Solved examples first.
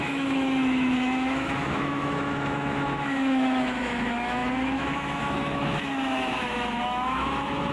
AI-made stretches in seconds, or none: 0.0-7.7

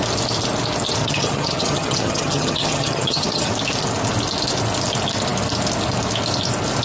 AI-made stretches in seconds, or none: 1.0-3.5

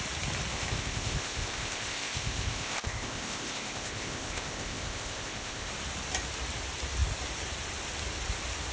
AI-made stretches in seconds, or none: 0.5-5.7